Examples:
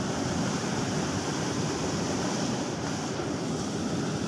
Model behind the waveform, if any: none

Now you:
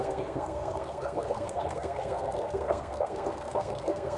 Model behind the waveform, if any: codec, SNAC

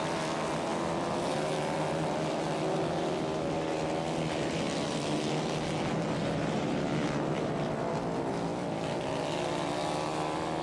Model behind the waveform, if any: none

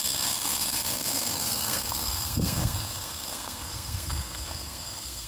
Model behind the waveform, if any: codec, SNAC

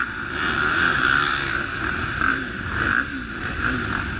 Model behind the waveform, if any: none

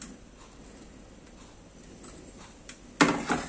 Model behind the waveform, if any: none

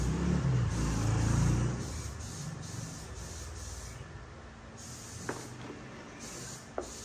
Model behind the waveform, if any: none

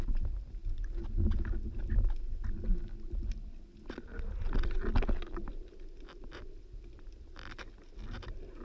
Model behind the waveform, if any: none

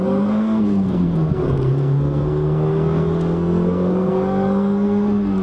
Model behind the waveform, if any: codec, SNAC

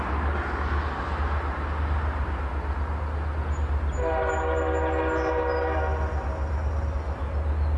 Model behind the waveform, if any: none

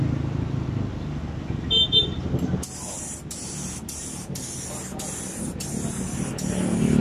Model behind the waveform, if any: none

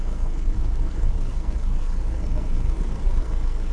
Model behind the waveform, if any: codec, SNAC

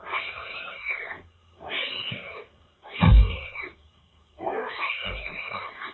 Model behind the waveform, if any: codec, SNAC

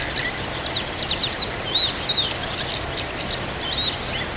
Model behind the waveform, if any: none